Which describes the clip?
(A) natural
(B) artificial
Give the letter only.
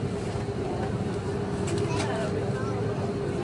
A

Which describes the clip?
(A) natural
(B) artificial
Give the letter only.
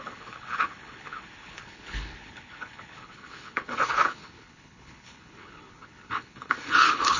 B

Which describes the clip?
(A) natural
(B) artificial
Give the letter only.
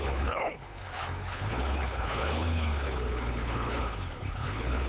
B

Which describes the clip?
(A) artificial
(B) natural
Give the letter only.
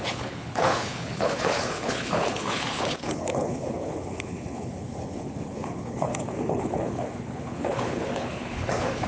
A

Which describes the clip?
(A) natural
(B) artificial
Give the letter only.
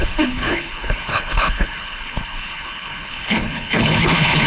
B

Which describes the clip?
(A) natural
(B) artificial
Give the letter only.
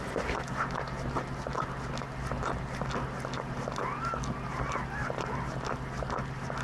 A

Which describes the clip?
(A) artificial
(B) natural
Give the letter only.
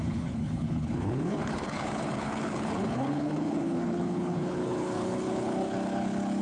A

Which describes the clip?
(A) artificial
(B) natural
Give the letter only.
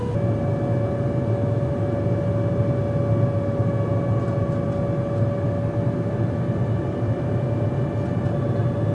B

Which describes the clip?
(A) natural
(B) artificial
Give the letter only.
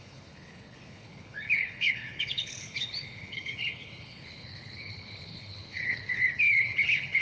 B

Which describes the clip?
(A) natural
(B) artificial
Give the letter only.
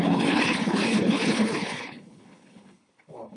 B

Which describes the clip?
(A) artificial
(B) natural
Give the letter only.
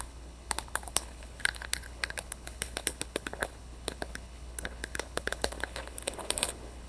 A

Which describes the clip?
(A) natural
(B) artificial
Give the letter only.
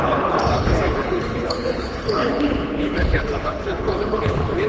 B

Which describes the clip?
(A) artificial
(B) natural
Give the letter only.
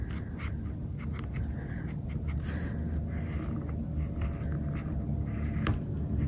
B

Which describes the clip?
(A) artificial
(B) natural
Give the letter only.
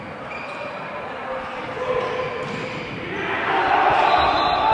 B